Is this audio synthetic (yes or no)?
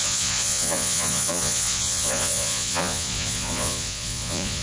yes